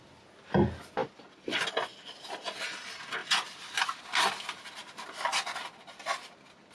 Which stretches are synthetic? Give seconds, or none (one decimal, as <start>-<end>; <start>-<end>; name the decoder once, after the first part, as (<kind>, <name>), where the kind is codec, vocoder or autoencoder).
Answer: 3.2-4.0 (vocoder, BigVGAN v2)